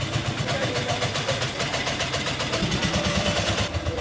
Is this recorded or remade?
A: remade